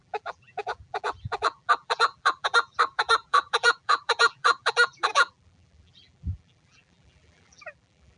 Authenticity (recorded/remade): remade